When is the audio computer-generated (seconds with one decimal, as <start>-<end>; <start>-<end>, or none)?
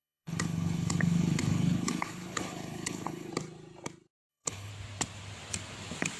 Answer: 0.0-3.3; 4.3-4.7